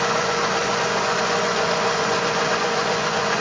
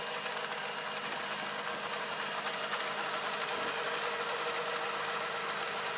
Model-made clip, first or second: first